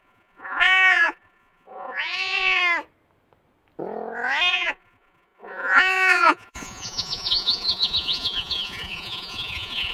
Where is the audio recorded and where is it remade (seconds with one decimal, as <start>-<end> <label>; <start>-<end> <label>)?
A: 0.0-2.6 remade; 2.6-4.5 recorded; 4.5-9.9 remade